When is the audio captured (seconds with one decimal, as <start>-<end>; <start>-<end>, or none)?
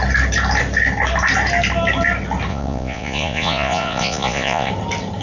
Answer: 0.0-2.5; 4.7-5.2